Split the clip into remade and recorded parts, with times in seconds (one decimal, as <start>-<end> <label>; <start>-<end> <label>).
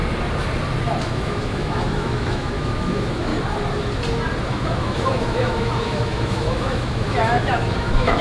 0.0-1.0 recorded; 1.0-3.3 remade; 3.3-4.4 recorded; 4.4-8.2 remade